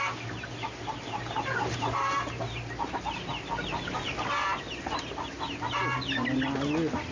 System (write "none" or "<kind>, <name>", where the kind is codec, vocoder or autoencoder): none